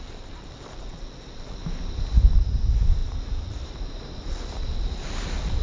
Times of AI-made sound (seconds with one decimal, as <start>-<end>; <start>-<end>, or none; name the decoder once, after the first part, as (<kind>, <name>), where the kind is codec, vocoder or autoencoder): 0.0-1.6 (vocoder, BigVGAN v2); 2.3-5.6